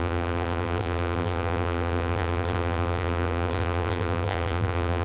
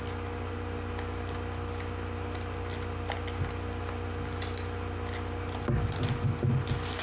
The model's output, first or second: first